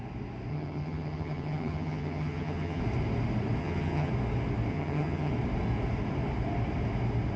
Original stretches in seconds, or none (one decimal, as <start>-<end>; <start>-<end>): 0.0-0.5; 2.8-3.6; 4.1-4.7; 5.3-7.4